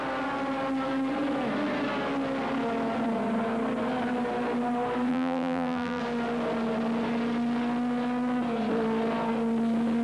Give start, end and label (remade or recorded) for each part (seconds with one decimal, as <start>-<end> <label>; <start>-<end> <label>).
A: 0.0-5.1 recorded; 5.1-6.0 remade; 6.0-10.0 recorded